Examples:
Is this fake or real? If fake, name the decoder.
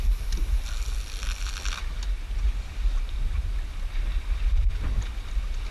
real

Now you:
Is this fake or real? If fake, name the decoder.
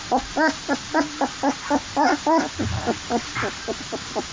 real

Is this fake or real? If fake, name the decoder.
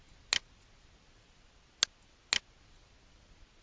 real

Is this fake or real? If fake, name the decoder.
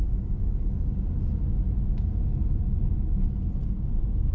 real